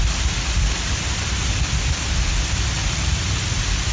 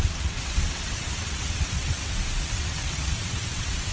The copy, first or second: second